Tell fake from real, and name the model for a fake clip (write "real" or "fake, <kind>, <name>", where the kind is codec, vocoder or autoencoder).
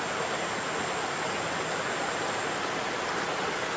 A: real